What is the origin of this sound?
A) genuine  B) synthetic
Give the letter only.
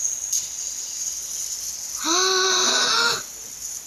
A